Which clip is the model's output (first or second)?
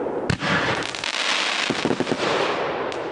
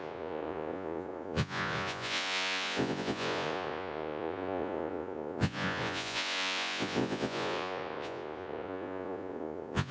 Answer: second